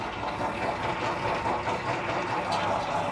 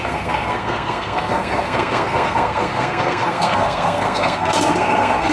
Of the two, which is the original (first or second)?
first